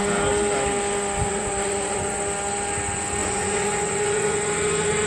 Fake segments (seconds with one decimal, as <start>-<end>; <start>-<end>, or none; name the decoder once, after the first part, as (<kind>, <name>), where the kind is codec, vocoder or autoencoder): 1.2-2.2 (vocoder, Vocos); 3.2-5.1